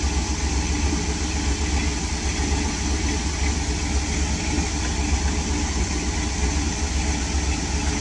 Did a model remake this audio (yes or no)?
no